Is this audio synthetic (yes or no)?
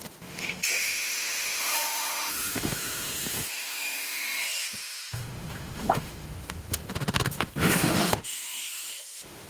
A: yes